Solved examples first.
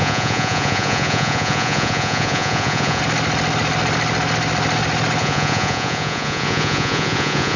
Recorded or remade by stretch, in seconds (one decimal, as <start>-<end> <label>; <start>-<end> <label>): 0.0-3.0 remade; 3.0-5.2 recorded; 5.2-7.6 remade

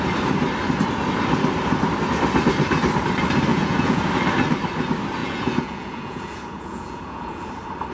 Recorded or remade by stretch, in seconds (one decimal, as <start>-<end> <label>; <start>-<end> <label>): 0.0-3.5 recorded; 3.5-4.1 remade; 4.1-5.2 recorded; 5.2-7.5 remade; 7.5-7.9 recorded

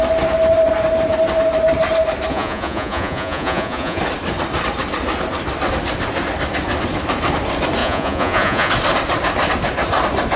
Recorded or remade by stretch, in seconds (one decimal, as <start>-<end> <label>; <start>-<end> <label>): 0.0-2.3 recorded; 2.3-4.0 remade; 4.0-7.8 recorded; 7.8-8.7 remade; 8.7-10.4 recorded

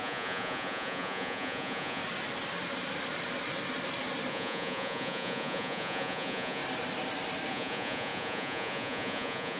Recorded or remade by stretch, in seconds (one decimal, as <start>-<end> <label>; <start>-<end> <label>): 0.0-2.0 remade; 2.0-4.3 recorded; 4.3-6.6 remade; 6.6-7.5 recorded; 7.5-9.6 remade

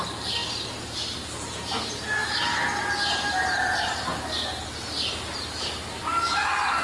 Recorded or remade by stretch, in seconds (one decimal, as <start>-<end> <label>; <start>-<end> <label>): 0.0-6.8 recorded

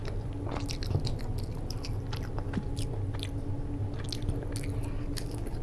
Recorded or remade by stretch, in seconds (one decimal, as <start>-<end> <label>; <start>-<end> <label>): 0.0-5.6 recorded

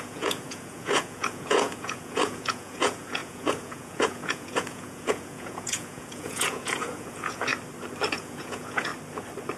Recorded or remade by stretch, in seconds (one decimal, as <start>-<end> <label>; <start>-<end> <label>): 0.0-7.5 remade; 7.5-8.1 recorded; 8.1-8.9 remade; 8.9-9.6 recorded

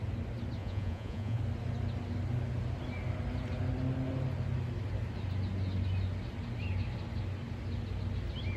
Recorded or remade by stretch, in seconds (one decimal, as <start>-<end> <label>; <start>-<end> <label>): 0.0-0.6 recorded; 0.6-1.4 remade; 1.4-8.6 recorded